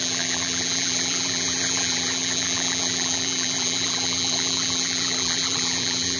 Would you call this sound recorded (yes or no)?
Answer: no